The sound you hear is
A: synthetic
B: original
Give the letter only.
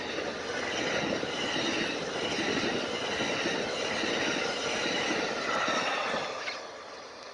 B